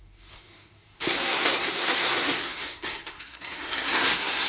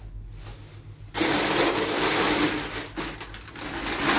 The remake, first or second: first